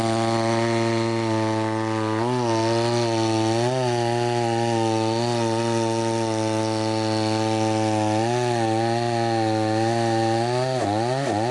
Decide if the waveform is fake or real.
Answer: real